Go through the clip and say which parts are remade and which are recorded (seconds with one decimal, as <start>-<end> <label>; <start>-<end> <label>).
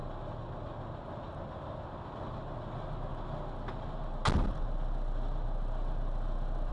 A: 0.0-6.7 recorded